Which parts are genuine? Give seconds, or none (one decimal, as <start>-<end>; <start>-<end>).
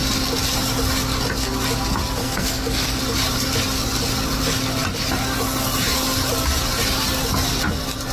0.0-2.2; 3.0-8.1